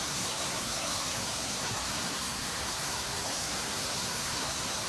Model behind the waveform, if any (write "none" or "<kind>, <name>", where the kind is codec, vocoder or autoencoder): codec, SNAC